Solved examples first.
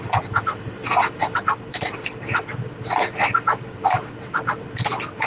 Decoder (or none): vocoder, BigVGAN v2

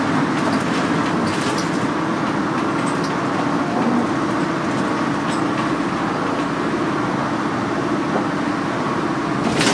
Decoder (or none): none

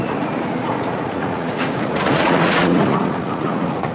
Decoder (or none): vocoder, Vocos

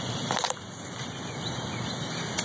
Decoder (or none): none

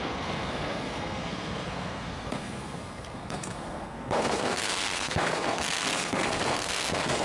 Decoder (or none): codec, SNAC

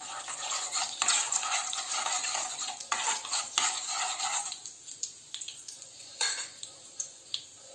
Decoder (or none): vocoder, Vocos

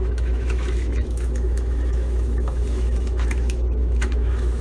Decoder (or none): autoencoder, DAC-VAE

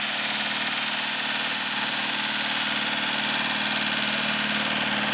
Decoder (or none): none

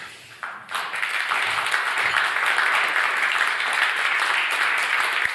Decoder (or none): none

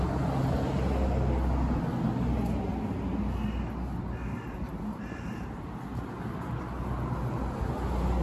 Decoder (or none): none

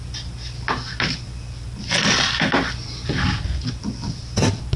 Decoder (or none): none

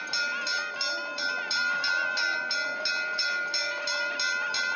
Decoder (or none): none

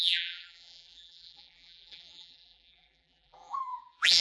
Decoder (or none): vocoder, BigVGAN v2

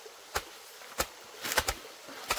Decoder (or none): none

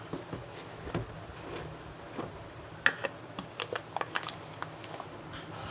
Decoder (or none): none